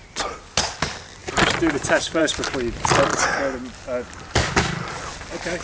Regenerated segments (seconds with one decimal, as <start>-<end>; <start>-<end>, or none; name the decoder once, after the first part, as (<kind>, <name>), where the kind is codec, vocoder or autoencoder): none